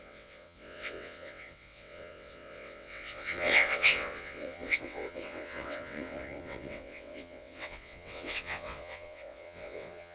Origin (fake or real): fake